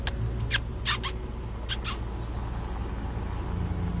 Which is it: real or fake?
real